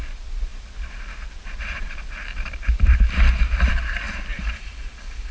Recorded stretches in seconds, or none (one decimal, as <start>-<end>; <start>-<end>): 0.0-0.5; 3.7-4.3; 4.8-5.3